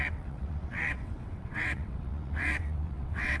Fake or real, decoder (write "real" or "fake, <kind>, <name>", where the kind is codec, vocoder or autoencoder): fake, vocoder, WaveNeXt